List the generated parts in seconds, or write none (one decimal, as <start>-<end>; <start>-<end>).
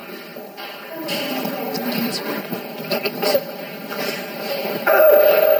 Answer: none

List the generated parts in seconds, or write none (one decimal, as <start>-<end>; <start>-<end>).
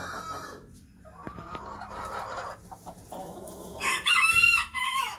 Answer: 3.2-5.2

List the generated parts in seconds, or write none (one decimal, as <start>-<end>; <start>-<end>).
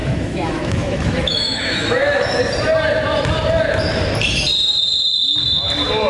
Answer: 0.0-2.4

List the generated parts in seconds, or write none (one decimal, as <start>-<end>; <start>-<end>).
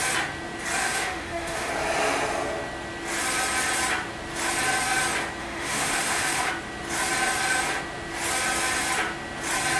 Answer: 0.8-1.7; 5.4-6.5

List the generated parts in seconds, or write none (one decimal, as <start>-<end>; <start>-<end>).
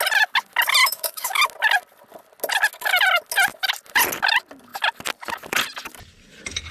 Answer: 0.8-1.4